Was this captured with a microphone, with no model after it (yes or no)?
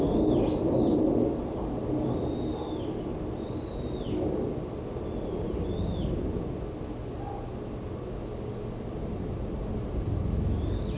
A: yes